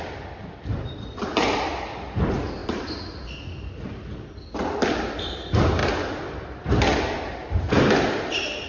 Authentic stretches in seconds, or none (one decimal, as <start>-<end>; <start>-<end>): 0.0-8.7